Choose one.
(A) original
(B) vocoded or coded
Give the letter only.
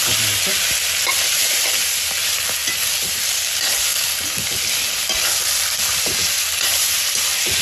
A